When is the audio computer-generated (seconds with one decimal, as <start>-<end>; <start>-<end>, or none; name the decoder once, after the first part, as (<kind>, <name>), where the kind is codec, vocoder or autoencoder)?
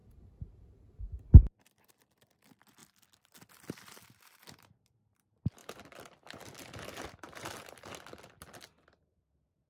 2.8-4.2 (vocoder, BigVGAN v2); 5.6-8.7